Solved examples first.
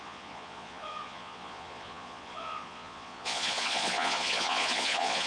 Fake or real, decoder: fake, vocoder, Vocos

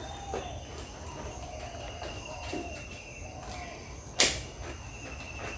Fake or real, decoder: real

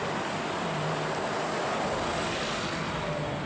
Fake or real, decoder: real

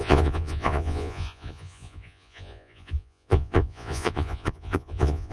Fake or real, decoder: fake, vocoder, Vocos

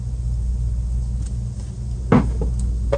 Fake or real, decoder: real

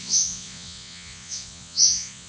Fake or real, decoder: fake, vocoder, Vocos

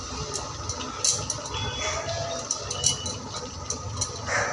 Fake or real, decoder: real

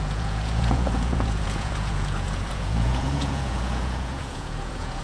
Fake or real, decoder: fake, vocoder, Vocos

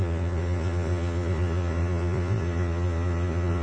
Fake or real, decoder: fake, vocoder, Vocos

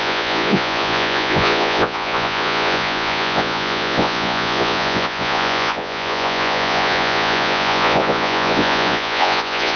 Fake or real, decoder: fake, vocoder, Vocos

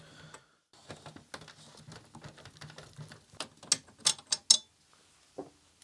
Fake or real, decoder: real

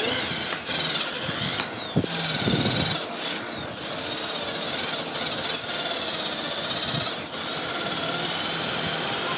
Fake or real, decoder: real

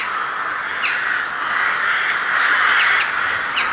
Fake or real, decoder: real